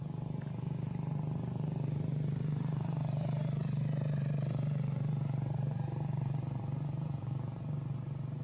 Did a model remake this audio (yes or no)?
yes